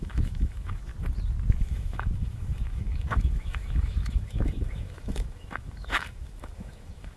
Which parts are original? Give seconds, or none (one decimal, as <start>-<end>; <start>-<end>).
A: 0.9-1.6